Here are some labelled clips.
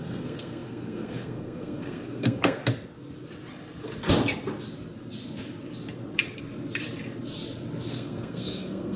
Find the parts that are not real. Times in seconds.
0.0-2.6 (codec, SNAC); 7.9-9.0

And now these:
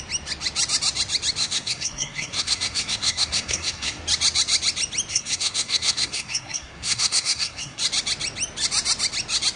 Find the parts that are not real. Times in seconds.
1.4-4.0 (codec, SNAC); 5.1-7.8

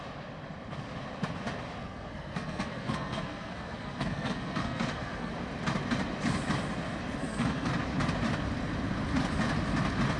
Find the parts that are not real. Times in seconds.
1.8-5.3 (codec, SNAC); 7.2-7.7

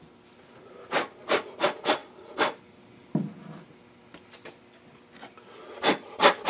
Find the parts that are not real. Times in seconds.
none